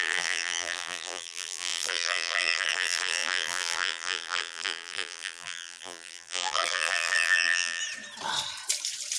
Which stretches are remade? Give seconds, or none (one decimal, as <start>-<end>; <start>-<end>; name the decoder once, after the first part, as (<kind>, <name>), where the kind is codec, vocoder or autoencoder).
0.0-7.8 (vocoder, BigVGAN v2)